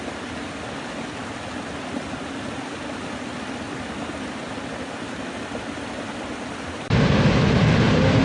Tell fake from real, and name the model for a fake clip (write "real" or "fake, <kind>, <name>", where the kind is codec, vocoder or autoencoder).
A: real